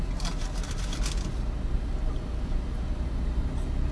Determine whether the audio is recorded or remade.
recorded